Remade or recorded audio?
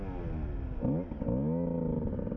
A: recorded